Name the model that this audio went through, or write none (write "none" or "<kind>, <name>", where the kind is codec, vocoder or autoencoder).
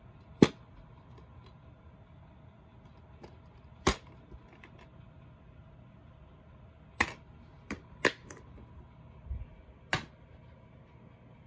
none